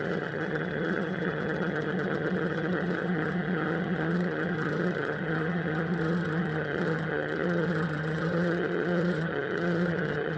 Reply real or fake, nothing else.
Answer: fake